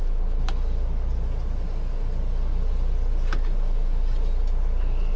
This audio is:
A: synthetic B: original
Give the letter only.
B